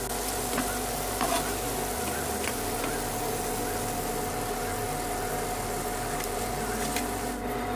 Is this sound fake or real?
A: real